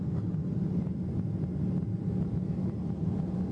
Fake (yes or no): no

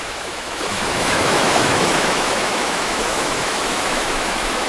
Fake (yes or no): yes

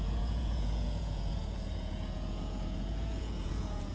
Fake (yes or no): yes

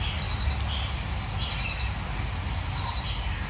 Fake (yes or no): no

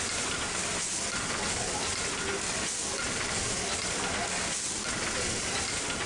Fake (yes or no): no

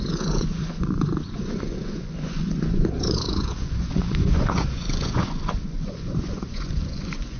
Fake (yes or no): yes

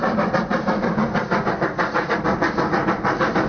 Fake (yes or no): no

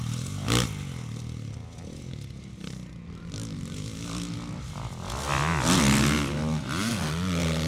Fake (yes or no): no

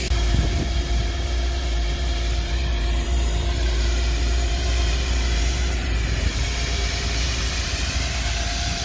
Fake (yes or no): yes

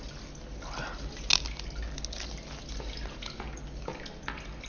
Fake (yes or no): no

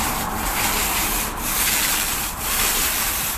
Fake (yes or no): yes